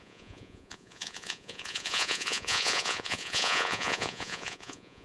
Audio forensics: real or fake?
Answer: fake